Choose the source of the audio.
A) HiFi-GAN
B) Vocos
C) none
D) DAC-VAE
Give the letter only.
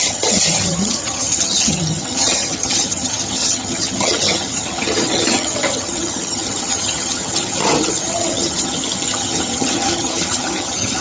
A